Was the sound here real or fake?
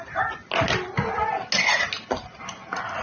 real